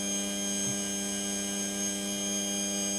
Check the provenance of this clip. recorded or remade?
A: recorded